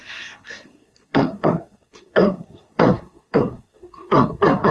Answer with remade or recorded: remade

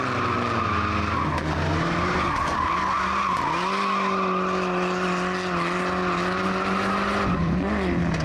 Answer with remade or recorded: recorded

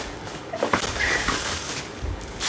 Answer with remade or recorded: remade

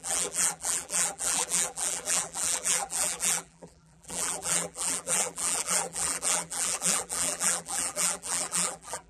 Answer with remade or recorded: remade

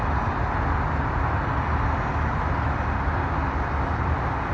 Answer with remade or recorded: recorded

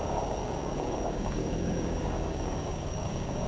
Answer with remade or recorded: remade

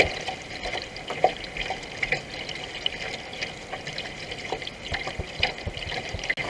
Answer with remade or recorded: recorded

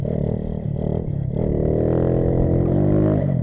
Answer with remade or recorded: recorded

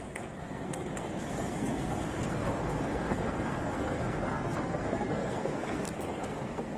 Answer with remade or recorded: remade